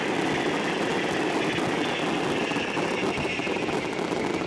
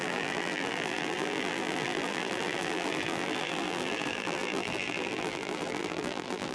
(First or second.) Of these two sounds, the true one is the first